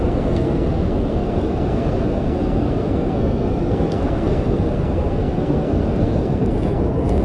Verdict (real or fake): fake